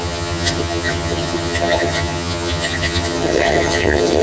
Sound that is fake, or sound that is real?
fake